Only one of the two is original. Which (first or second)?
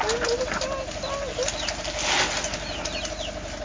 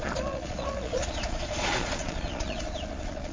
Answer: first